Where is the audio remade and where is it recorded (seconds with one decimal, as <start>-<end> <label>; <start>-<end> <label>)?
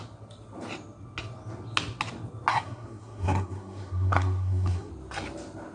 0.0-2.5 recorded; 2.5-4.9 remade; 4.9-5.7 recorded